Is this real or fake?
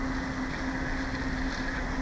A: real